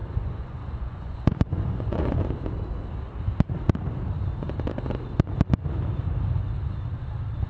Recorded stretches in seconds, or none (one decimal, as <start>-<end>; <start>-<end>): 2.2-7.5